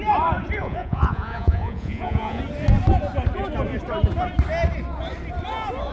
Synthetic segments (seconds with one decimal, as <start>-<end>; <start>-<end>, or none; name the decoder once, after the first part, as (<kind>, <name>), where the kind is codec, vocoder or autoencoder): 0.6-2.4 (vocoder, Vocos)